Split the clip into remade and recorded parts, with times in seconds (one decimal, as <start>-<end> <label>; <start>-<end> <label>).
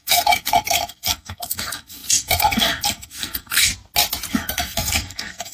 0.0-3.7 remade; 3.7-4.3 recorded; 4.3-5.5 remade